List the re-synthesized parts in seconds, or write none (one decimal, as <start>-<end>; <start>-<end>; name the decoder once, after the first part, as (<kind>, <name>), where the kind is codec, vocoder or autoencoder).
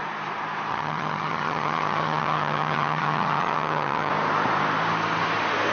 0.7-4.1 (vocoder, HiFi-GAN)